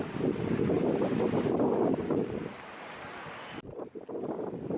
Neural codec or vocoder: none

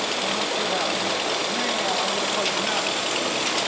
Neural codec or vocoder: none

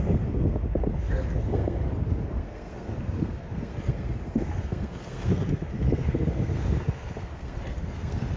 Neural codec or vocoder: codec, SNAC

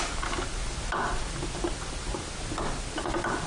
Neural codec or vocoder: none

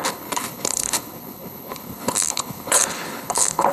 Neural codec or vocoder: codec, HILCodec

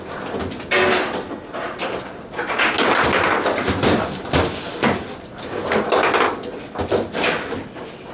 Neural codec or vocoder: none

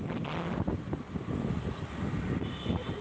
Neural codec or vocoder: none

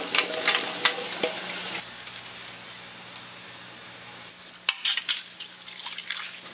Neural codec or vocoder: none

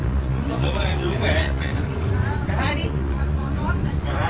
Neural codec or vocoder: vocoder, Vocos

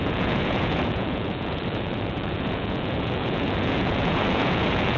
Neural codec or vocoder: vocoder, Vocos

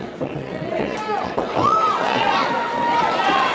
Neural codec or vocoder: vocoder, WaveNeXt